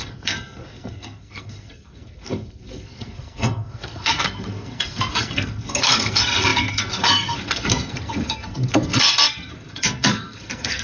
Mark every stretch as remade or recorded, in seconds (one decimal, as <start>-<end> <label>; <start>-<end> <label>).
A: 0.0-10.8 remade